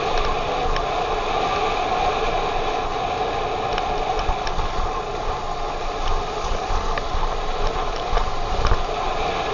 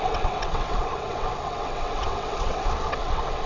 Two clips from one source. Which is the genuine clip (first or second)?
first